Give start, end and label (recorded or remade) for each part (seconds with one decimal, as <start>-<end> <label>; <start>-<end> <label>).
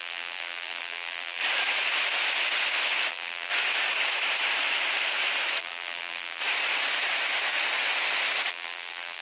0.0-1.4 remade; 1.4-3.1 recorded; 3.1-3.5 remade; 3.5-5.6 recorded; 5.6-6.4 remade; 6.4-8.5 recorded; 8.5-9.2 remade